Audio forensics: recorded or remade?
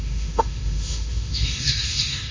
remade